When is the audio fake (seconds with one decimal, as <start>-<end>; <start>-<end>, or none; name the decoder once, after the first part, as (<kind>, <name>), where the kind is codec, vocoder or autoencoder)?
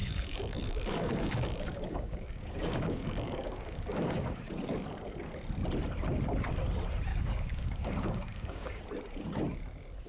0.0-4.5 (codec, DAC); 7.1-8.8